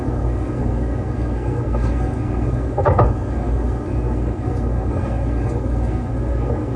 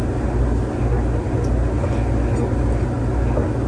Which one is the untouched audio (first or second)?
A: second